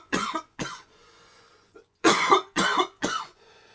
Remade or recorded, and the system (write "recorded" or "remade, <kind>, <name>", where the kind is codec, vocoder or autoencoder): remade, vocoder, Vocos